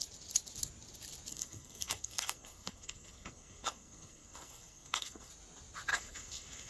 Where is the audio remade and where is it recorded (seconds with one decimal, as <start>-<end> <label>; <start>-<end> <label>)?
0.0-1.3 recorded; 1.3-5.3 remade; 5.3-5.9 recorded; 5.9-6.7 remade